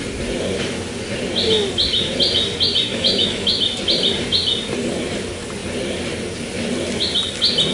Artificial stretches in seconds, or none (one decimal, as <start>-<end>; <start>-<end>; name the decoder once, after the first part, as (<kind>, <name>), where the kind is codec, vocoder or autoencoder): 2.9-3.6 (autoencoder, DAC-VAE)